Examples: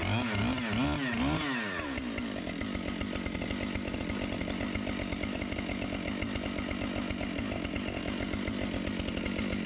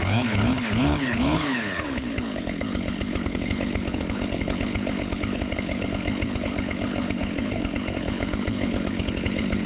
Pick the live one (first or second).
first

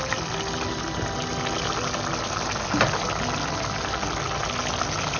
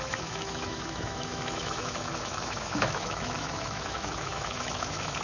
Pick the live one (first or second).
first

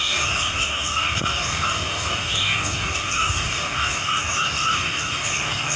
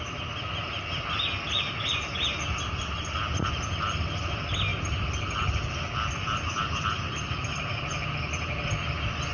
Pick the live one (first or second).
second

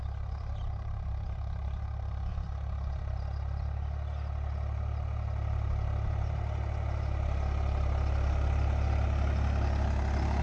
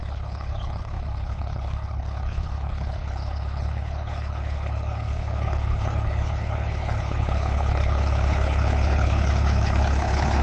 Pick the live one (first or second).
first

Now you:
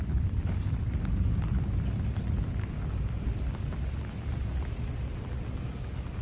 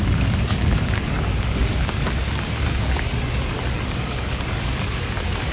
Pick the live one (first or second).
first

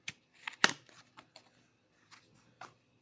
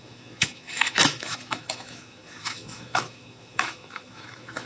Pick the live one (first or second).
first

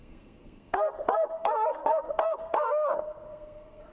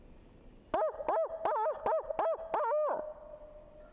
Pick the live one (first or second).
second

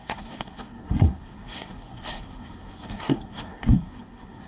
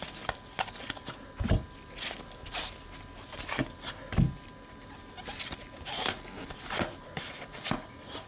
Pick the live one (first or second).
second